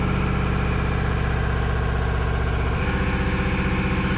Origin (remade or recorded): recorded